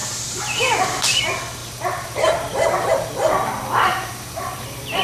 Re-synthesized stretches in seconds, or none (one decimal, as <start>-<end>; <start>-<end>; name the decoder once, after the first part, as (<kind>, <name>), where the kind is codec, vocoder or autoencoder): 0.0-1.2 (vocoder, BigVGAN v2); 1.6-2.9; 3.9-5.0